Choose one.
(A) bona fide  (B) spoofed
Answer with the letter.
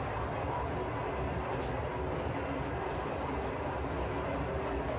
A